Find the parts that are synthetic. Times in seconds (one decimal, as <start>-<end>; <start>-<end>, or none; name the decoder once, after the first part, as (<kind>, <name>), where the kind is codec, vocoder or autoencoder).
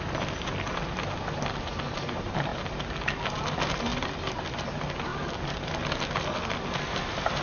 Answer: 0.0-2.5 (vocoder, BigVGAN v2); 3.5-5.1; 5.7-7.4